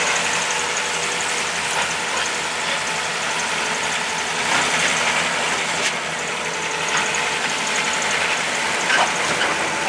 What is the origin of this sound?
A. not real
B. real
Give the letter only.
B